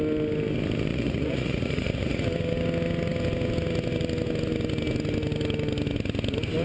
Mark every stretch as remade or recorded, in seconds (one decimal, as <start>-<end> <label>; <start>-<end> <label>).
0.0-0.9 recorded; 0.9-2.2 remade; 2.2-6.6 recorded